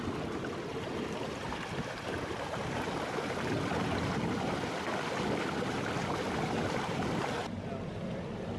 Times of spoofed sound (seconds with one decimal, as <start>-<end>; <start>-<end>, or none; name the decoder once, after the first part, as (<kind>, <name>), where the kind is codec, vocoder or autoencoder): none